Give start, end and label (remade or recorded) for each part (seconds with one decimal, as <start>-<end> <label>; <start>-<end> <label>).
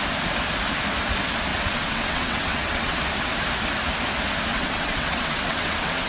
0.0-1.5 recorded; 1.5-3.0 remade; 3.0-4.5 recorded; 4.5-6.1 remade